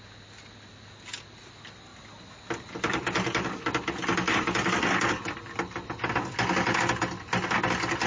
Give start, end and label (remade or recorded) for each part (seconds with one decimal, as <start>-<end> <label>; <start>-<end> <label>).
0.0-8.1 recorded